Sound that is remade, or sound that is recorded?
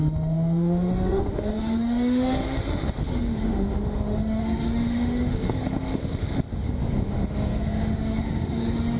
remade